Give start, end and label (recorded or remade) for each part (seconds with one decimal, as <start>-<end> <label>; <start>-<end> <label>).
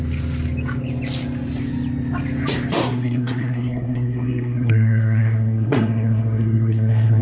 0.0-2.8 recorded; 2.8-7.2 remade